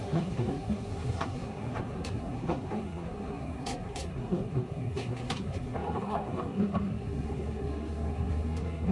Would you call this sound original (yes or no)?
no